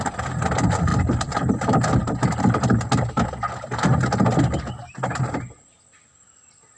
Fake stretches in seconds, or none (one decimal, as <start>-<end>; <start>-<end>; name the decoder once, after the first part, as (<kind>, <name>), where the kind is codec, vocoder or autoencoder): none